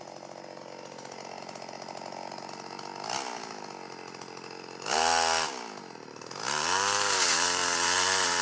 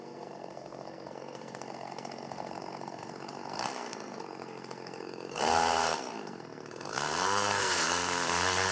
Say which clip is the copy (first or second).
second